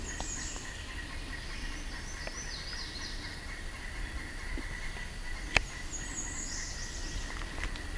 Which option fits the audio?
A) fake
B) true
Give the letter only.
B